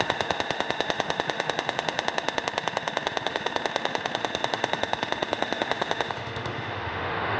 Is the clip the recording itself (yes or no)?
no